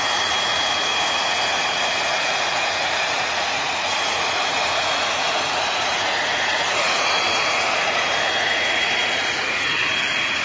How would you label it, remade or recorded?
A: remade